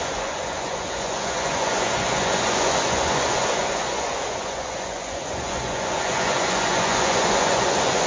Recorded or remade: remade